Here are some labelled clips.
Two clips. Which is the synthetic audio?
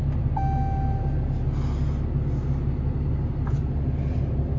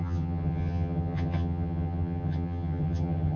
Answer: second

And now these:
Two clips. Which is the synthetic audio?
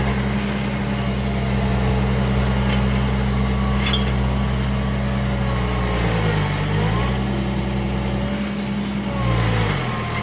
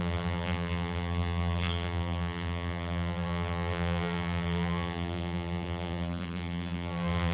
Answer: second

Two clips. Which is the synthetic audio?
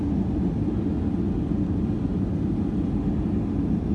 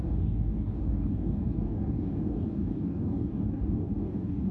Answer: second